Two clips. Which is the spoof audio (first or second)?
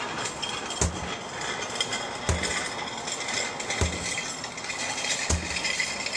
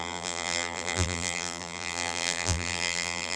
second